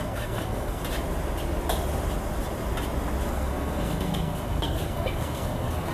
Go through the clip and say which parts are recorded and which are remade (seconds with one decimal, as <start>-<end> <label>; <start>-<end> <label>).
0.0-0.8 remade; 0.8-3.3 recorded; 3.3-5.9 remade

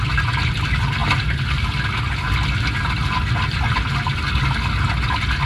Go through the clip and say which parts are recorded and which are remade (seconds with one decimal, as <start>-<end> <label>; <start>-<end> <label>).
0.0-5.5 recorded

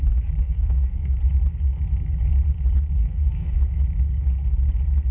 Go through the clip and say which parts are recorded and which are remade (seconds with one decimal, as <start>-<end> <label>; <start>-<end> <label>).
0.0-0.4 recorded; 0.4-1.1 remade; 1.1-3.0 recorded; 3.0-3.8 remade; 3.8-5.1 recorded

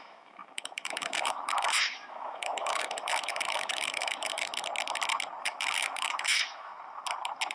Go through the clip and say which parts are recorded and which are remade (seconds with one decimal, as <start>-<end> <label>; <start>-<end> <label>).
0.0-4.5 remade; 4.5-5.4 recorded; 5.4-6.7 remade; 6.7-7.5 recorded